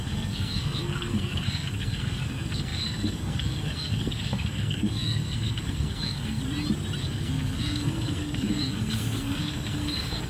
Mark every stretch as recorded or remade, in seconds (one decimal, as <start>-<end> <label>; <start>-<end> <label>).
0.0-6.4 remade; 6.4-7.0 recorded; 7.0-10.3 remade